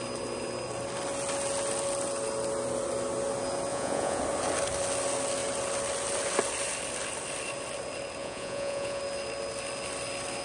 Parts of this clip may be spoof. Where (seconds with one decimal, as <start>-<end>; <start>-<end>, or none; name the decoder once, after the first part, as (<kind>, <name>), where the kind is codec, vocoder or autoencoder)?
3.7-4.2 (vocoder, Vocos); 8.2-9.0